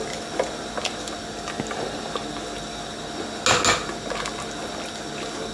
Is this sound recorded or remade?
recorded